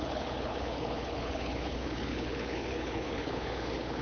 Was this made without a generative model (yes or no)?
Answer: no